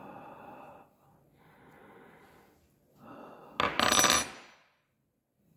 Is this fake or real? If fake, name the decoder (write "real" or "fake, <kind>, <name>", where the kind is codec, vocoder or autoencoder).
real